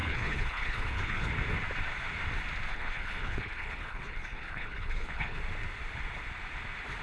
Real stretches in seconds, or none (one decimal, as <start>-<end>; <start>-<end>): 1.3-2.7; 5.4-7.0